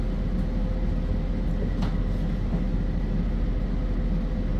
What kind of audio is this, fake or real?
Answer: real